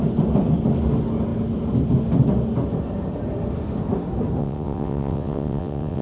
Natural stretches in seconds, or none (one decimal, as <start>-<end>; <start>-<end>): 0.0-4.4